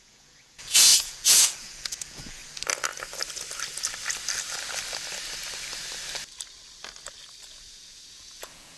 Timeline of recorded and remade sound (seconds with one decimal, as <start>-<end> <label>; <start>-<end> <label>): 0.0-2.4 remade; 2.4-7.5 recorded; 7.5-8.8 remade